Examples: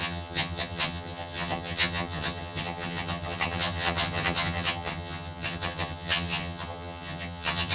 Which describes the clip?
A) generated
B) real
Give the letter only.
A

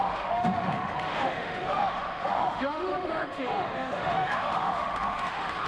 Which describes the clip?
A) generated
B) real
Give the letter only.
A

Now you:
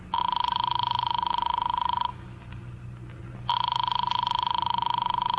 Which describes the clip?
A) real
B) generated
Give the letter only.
A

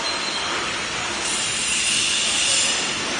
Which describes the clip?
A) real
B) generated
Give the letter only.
A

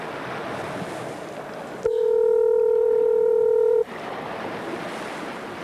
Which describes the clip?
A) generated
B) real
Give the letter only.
B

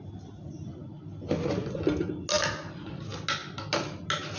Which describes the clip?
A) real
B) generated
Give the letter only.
A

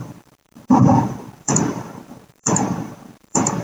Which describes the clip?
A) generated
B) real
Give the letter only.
A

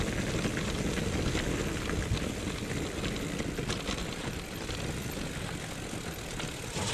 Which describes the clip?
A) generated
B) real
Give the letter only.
B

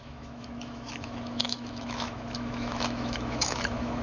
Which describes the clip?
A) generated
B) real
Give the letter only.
A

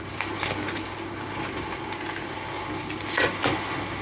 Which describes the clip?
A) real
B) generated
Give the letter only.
A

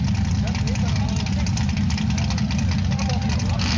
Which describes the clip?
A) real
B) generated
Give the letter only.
A